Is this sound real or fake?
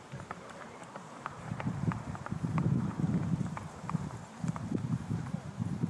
fake